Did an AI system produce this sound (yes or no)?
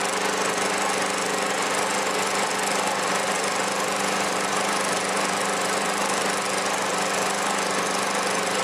no